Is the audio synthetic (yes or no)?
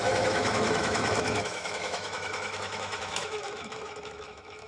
yes